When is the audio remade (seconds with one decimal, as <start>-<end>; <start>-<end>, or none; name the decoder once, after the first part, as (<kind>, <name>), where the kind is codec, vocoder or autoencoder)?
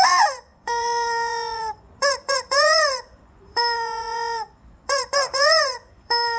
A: 0.0-6.4 (vocoder, Vocos)